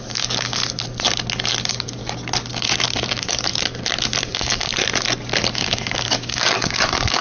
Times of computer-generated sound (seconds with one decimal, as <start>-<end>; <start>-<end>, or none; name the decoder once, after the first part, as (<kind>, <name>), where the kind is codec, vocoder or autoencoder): 0.0-0.6 (codec, DAC); 1.6-2.0; 3.1-3.5; 4.3-4.7; 5.5-7.2